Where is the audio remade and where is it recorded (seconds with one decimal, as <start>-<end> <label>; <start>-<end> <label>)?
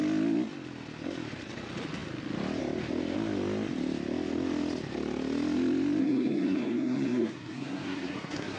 0.0-6.0 recorded; 6.0-8.6 remade